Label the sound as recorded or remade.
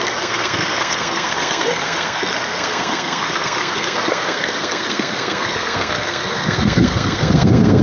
remade